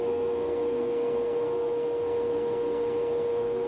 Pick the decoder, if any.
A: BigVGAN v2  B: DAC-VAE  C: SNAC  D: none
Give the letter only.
C